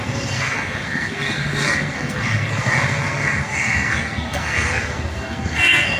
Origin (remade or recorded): remade